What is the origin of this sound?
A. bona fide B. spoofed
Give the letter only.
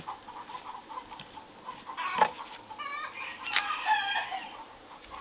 B